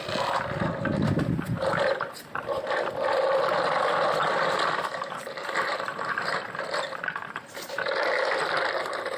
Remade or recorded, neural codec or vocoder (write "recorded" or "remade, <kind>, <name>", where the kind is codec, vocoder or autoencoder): recorded